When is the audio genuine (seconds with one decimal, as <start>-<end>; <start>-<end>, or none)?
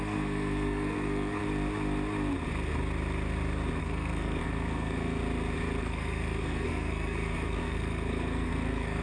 1.4-3.8; 5.2-5.8